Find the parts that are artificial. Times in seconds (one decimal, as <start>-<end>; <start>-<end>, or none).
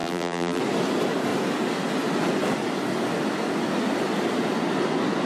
0.0-0.6